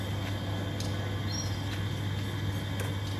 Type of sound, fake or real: real